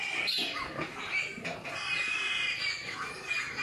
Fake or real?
real